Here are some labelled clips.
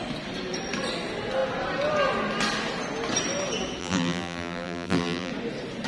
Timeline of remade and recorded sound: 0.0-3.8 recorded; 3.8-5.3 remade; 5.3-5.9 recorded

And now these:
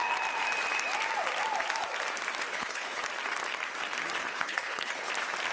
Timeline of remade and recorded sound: 0.0-2.5 recorded; 2.5-3.0 remade; 3.0-4.2 recorded; 4.2-5.1 remade; 5.1-5.5 recorded